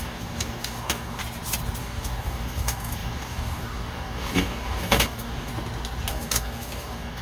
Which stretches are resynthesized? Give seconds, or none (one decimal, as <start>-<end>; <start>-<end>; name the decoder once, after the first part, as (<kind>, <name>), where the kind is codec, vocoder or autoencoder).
0.0-1.2 (codec, DAC); 1.8-5.5; 6.1-7.2